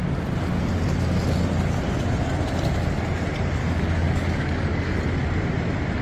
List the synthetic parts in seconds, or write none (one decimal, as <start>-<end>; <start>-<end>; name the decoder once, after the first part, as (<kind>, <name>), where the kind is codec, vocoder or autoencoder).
3.6-4.9 (codec, DAC)